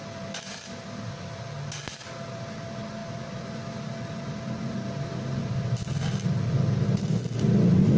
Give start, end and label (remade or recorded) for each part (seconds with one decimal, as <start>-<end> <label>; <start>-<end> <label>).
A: 0.0-8.0 recorded